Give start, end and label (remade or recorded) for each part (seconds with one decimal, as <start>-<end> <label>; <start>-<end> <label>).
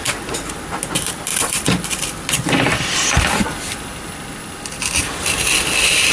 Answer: 0.0-6.1 remade